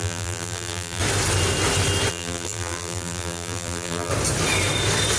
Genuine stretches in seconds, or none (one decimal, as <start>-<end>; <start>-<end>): 1.0-2.1; 4.1-5.2